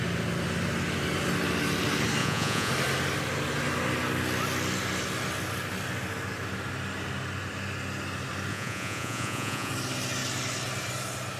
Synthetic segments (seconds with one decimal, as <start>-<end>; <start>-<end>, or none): 2.2-2.7; 8.5-9.7